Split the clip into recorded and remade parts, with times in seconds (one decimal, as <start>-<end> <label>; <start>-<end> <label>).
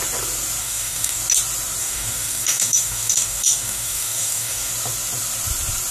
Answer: 0.0-0.6 recorded; 0.6-1.2 remade; 1.2-1.8 recorded; 1.8-4.7 remade; 4.7-5.9 recorded